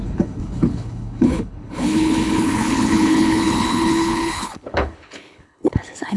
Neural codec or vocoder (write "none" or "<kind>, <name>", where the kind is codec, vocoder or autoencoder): codec, HILCodec